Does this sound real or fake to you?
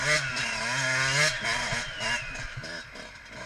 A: real